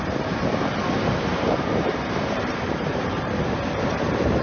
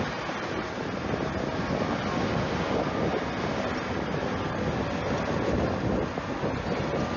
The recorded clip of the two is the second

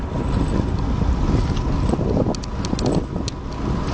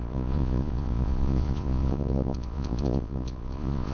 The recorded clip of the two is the first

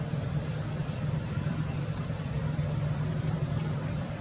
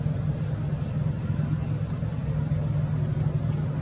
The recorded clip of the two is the second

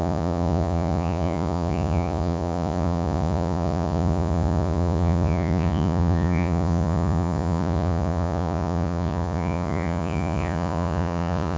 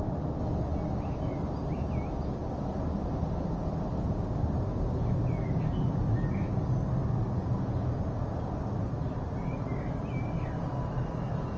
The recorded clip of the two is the second